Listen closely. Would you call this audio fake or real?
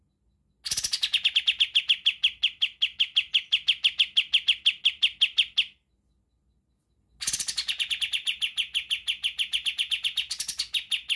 real